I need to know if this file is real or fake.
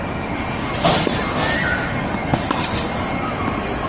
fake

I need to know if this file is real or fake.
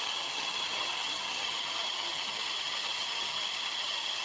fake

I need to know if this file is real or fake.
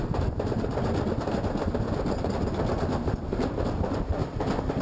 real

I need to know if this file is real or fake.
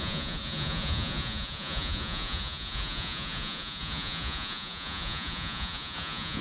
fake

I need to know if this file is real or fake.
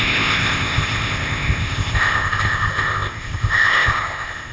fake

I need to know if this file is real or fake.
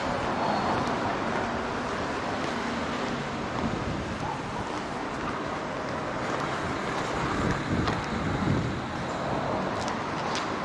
real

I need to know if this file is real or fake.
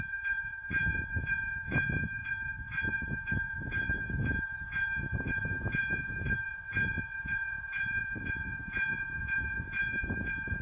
fake